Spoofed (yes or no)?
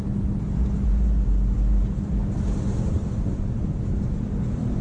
no